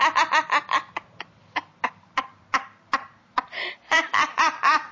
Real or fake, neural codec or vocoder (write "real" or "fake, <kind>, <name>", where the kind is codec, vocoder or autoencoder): fake, vocoder, BigVGAN v2